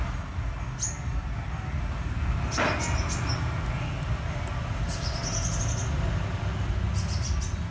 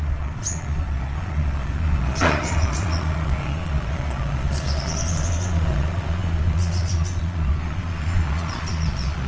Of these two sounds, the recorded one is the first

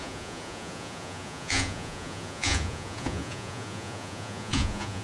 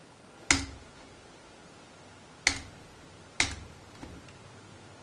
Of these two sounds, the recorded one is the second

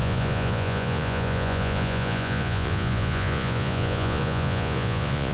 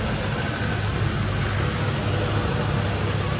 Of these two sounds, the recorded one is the second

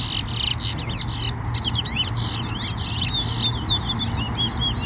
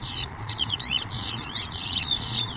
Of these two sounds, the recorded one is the first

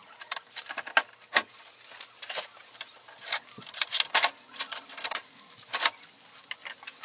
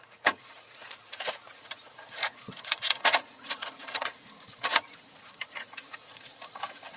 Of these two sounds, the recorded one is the first